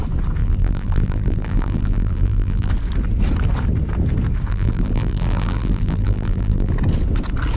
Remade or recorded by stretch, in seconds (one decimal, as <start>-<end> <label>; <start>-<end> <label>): 0.0-0.4 recorded; 0.4-2.7 remade; 2.7-4.5 recorded; 4.5-6.7 remade; 6.7-7.6 recorded